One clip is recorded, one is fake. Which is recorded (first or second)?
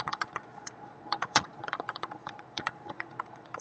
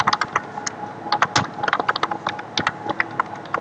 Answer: second